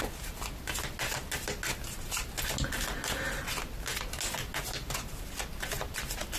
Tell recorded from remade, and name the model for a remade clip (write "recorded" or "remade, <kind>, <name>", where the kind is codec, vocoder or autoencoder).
recorded